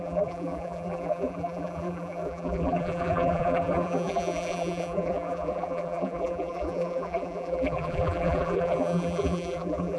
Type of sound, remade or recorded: remade